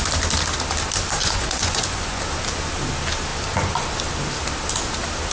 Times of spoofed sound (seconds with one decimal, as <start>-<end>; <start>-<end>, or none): 1.2-2.2